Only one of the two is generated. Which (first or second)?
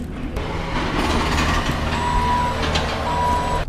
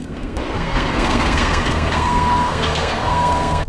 second